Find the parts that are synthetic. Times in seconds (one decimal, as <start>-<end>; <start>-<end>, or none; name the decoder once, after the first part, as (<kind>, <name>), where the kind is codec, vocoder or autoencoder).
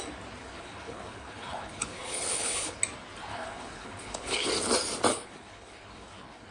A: 0.4-2.8 (codec, HILCodec); 3.3-4.5; 5.1-6.5